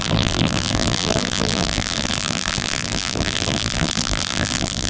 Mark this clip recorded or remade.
remade